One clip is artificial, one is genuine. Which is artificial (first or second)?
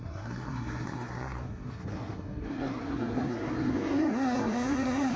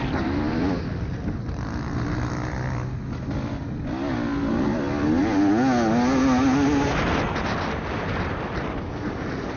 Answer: first